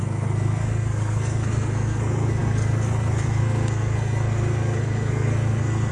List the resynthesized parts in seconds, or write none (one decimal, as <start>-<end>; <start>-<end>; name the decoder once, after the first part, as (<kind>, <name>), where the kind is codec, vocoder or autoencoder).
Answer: 0.0-5.9 (codec, SNAC)